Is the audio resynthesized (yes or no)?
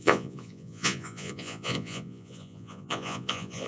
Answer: yes